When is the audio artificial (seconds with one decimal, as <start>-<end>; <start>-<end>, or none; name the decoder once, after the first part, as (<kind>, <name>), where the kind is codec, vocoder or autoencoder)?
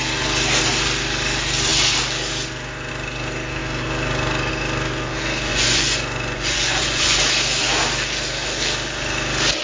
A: 5.5-7.2 (vocoder, Vocos)